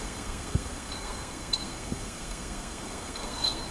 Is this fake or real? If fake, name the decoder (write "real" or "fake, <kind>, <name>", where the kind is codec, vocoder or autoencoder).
fake, codec, SNAC